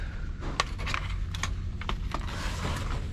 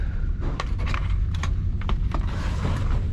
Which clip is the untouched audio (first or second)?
first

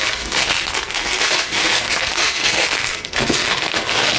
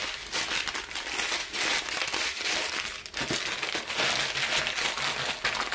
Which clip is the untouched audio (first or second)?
second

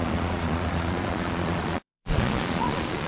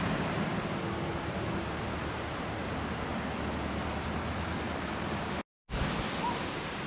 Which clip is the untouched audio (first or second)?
second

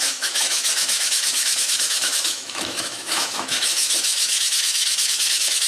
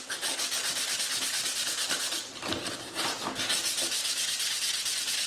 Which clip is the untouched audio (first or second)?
second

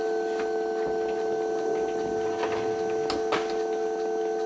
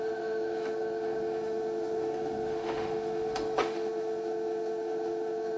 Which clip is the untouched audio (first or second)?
first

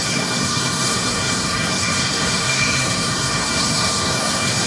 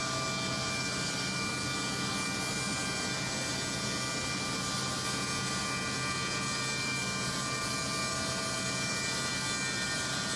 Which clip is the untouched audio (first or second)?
second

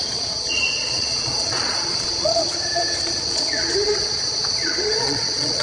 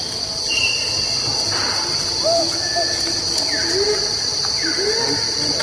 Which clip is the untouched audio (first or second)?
second